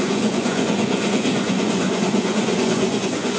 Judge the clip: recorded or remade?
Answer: remade